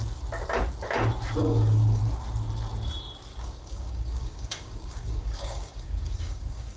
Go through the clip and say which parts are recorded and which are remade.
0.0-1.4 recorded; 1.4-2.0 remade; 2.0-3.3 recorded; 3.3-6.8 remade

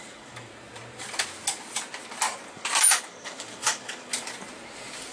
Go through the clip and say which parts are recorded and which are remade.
0.0-0.5 remade; 0.5-2.5 recorded; 2.5-4.1 remade; 4.1-5.1 recorded

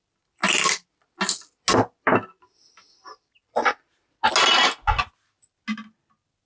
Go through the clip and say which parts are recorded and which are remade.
0.0-6.5 recorded

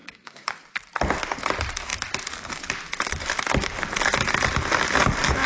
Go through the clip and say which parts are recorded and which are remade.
0.0-0.5 remade; 0.5-5.5 recorded

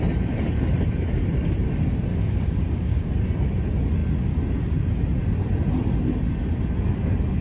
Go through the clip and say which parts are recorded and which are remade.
0.0-2.1 recorded; 2.1-3.1 remade; 3.1-7.4 recorded

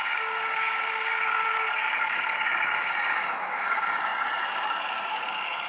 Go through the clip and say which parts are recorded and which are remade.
0.0-5.7 remade